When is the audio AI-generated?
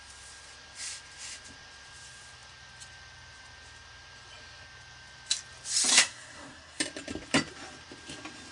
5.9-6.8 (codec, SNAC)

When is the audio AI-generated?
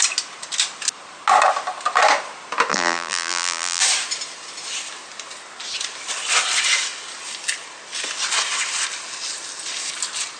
2.7-3.8 (vocoder, BigVGAN v2)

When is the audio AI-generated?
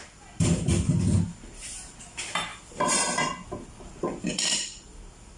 0.0-2.5 (vocoder, BigVGAN v2); 3.8-5.4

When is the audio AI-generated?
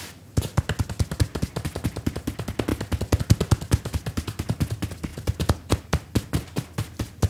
none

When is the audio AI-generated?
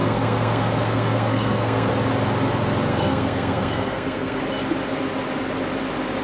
0.0-1.9 (codec, SNAC); 2.9-4.4